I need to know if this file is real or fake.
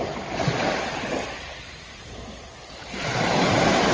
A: real